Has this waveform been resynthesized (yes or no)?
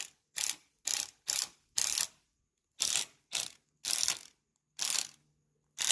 no